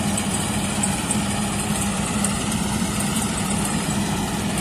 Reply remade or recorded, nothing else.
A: remade